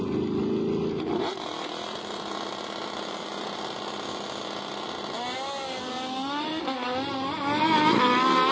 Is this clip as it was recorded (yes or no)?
yes